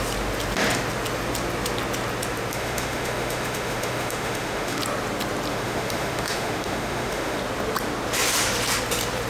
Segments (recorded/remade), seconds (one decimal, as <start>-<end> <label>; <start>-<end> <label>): 0.0-2.5 recorded; 2.5-4.8 remade; 4.8-5.5 recorded; 5.5-7.4 remade; 7.4-9.3 recorded